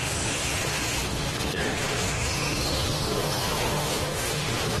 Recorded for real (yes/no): no